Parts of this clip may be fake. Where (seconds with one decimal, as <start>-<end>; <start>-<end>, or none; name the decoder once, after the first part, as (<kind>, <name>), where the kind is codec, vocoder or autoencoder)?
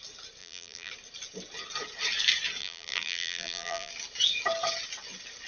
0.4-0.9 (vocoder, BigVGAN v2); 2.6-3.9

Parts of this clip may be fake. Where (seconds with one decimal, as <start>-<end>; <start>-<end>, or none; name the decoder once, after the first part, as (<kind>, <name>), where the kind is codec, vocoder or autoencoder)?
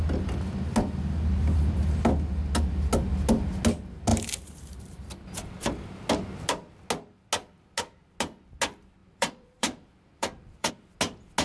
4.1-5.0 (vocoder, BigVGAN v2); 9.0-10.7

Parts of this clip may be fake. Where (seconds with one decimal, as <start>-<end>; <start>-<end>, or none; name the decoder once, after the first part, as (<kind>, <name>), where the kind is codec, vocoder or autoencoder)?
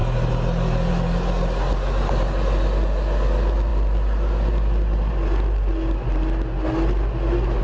none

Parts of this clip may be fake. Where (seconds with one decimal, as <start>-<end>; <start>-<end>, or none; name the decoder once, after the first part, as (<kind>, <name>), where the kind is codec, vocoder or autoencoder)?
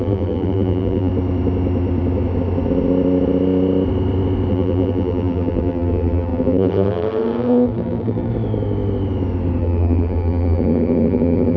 0.0-1.1 (vocoder, BigVGAN v2); 4.5-8.3; 9.6-11.6